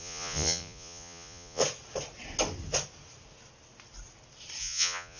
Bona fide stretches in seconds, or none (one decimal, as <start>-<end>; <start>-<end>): 1.6-4.6